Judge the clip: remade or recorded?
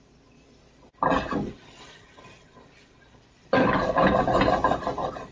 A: recorded